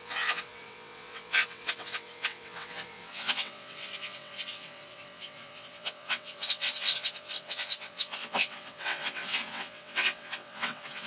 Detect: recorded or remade remade